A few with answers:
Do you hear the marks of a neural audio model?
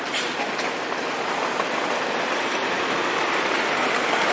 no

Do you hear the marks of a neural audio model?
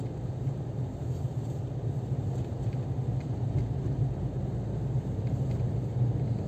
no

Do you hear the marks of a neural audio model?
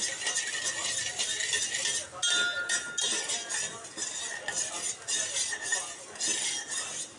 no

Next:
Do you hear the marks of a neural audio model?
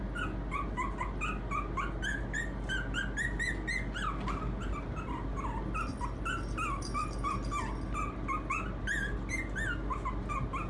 no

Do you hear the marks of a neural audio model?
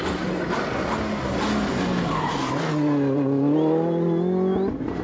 no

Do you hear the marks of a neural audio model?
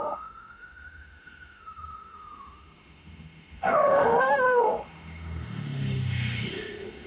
yes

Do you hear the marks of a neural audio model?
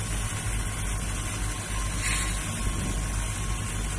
no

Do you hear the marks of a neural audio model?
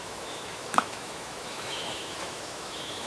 yes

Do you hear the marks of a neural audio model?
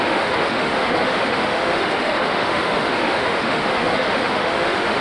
yes